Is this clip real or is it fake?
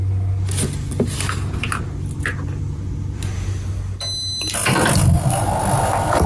real